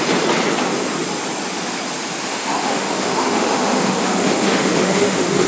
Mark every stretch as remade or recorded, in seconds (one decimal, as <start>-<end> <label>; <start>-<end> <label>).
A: 0.0-2.3 recorded; 2.3-5.5 remade